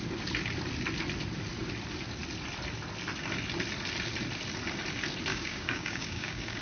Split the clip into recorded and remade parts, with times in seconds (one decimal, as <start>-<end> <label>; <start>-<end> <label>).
0.0-5.3 recorded; 5.3-6.6 remade